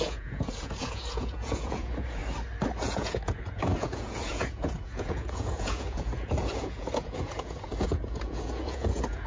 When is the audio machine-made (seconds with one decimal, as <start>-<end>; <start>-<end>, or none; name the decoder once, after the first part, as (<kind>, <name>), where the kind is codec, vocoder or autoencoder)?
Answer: 0.0-2.2 (vocoder, Vocos); 2.8-9.3